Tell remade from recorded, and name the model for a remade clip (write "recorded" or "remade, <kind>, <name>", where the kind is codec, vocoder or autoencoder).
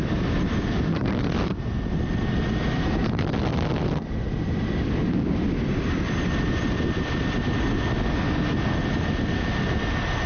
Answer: recorded